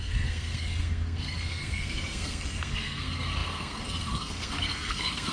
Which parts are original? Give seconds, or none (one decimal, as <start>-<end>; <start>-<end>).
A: none